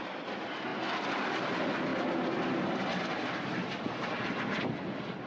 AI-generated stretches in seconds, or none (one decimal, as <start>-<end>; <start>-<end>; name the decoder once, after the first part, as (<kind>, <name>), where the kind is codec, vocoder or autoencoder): 0.7-1.5 (vocoder, BigVGAN v2)